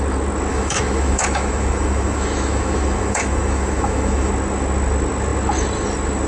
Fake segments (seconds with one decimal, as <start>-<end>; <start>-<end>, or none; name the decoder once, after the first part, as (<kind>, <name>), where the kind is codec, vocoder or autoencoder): 0.5-4.3 (autoencoder, DAC-VAE)